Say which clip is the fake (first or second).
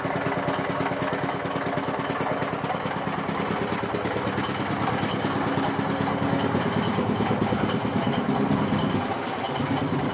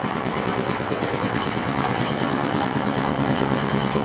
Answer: second